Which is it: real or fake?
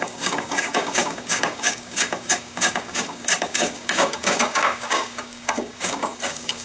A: fake